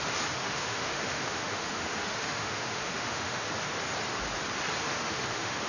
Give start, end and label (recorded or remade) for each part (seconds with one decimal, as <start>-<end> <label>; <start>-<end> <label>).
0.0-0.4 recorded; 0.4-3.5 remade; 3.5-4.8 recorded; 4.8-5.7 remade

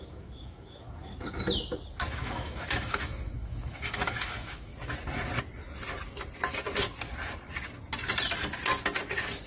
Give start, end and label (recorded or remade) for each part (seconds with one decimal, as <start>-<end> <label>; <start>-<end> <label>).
0.0-1.1 remade; 1.1-2.1 recorded; 2.1-4.7 remade; 4.7-9.5 recorded

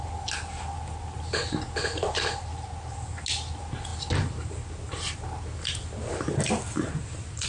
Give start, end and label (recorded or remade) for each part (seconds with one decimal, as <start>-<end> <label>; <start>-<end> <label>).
0.0-7.5 recorded

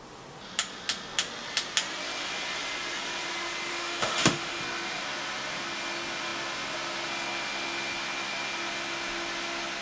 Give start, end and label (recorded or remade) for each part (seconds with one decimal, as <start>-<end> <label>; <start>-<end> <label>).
0.0-3.7 recorded; 3.7-4.6 remade; 4.6-9.8 recorded